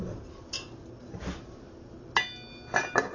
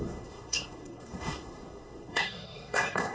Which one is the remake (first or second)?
second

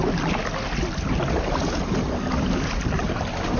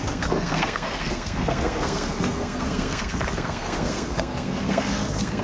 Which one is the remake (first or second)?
second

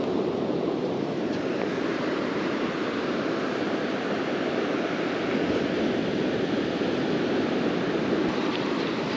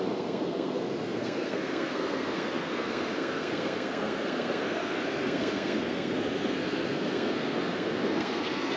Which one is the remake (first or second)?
second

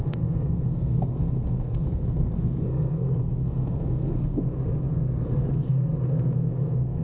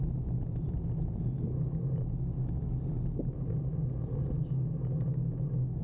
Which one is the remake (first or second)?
first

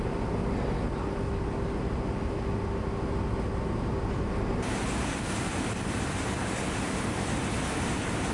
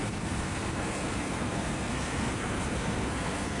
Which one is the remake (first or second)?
second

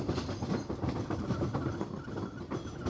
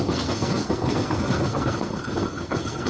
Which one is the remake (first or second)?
second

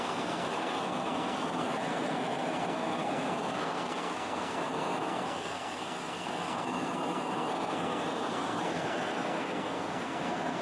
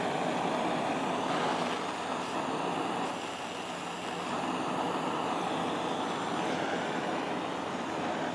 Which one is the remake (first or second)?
first